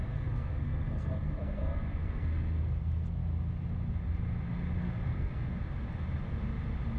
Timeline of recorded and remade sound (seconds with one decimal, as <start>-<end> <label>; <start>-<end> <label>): 0.0-3.2 remade; 3.2-4.8 recorded; 4.8-5.5 remade; 5.5-7.0 recorded